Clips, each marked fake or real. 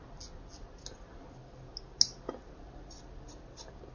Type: real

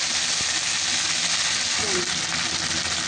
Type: real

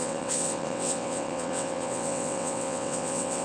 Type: fake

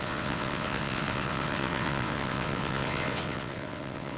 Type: fake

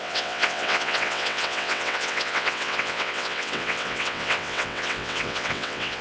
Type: fake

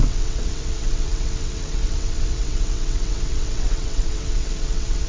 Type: fake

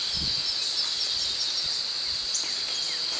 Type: real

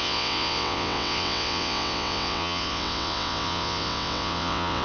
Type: fake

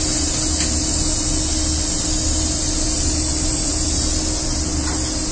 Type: real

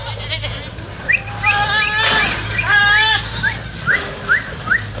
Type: real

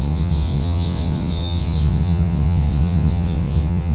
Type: fake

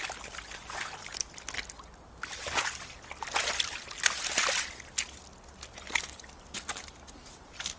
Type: real